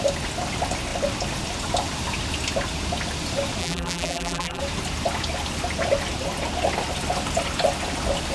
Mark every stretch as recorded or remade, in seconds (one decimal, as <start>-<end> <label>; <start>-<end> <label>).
0.0-3.6 recorded; 3.6-4.6 remade; 4.6-8.3 recorded